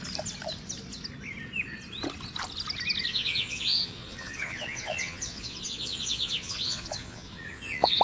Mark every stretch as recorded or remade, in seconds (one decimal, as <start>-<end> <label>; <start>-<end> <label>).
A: 0.0-3.1 recorded; 3.1-8.0 remade